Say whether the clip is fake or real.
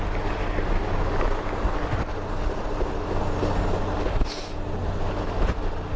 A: real